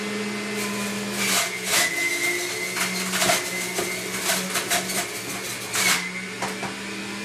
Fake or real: real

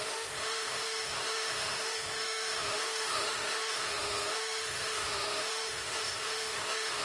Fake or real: fake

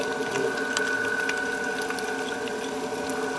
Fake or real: real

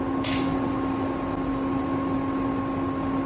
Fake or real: real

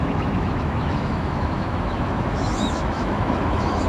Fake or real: fake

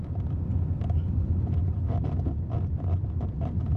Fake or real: real